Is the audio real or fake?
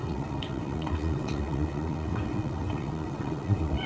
fake